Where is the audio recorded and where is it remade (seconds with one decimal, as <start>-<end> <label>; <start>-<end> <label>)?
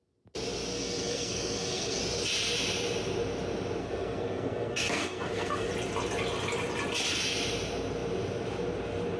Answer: 0.0-0.7 recorded; 0.7-2.0 remade; 2.0-3.8 recorded; 3.8-5.7 remade; 5.7-9.2 recorded